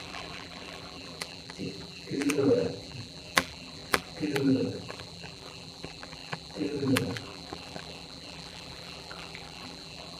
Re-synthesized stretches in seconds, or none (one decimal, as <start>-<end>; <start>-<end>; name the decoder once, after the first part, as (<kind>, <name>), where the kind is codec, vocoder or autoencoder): 0.0-10.2 (vocoder, BigVGAN v2)